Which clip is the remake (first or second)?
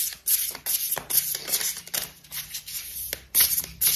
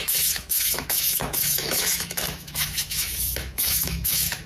second